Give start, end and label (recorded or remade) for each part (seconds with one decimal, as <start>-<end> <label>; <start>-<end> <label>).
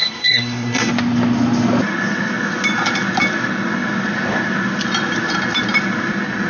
0.0-0.9 remade; 0.9-6.5 recorded